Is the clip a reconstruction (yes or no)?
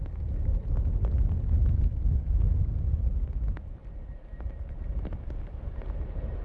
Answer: no